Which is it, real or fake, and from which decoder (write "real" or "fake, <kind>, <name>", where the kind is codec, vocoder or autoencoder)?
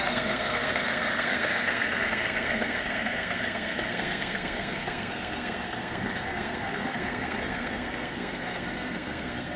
fake, codec, SNAC